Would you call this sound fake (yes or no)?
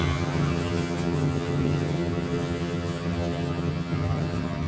yes